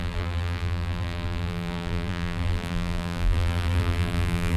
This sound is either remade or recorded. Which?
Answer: remade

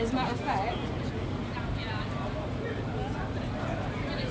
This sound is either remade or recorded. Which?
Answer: recorded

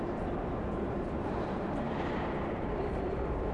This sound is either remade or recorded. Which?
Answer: remade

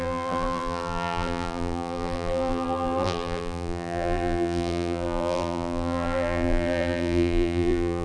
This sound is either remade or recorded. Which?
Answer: remade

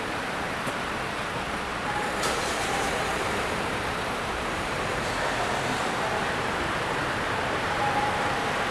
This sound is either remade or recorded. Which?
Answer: remade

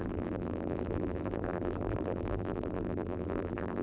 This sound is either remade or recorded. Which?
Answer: remade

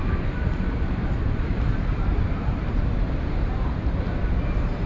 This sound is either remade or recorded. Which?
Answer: remade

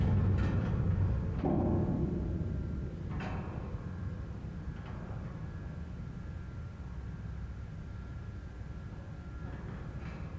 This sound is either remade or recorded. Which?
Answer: recorded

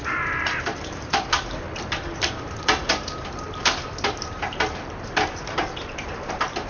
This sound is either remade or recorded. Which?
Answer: remade